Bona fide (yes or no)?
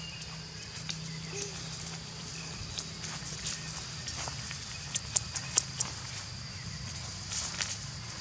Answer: yes